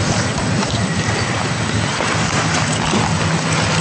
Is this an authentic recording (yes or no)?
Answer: yes